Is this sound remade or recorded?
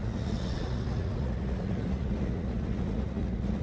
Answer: remade